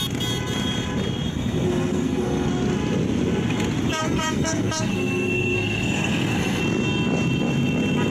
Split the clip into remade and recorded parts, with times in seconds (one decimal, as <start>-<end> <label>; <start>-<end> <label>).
0.0-1.3 recorded; 1.3-2.5 remade; 2.5-4.0 recorded; 4.0-6.6 remade; 6.6-8.1 recorded